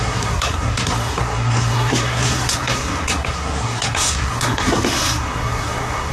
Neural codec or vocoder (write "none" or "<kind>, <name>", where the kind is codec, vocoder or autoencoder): codec, SNAC